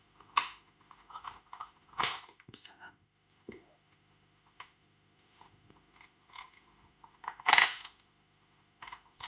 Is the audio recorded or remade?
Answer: remade